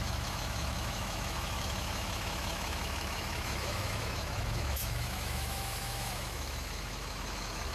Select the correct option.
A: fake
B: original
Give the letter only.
A